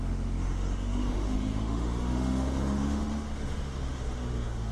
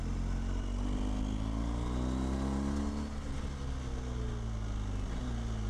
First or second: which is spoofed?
first